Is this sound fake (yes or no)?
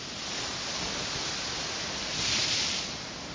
no